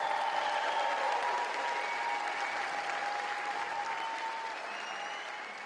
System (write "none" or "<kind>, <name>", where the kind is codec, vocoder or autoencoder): none